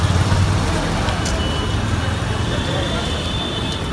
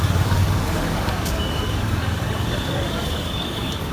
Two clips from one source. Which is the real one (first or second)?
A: first